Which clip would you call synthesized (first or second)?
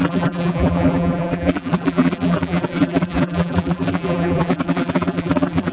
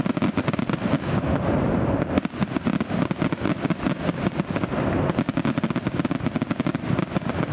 first